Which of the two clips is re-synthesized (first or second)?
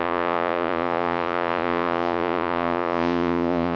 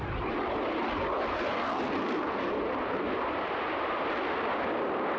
first